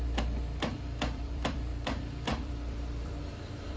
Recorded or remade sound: remade